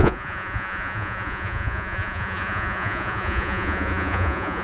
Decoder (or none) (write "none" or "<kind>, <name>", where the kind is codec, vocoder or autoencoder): vocoder, Vocos